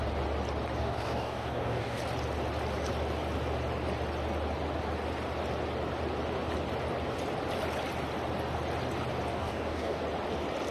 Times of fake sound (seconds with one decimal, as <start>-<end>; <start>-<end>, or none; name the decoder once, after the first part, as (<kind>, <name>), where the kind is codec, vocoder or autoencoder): 0.8-2.0 (codec, DAC); 9.3-10.0